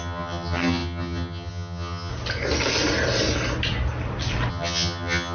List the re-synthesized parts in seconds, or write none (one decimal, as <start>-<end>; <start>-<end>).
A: 0.0-2.1; 4.5-5.3